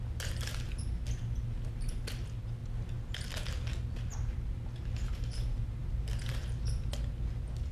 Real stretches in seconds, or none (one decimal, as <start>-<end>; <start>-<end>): 0.0-7.7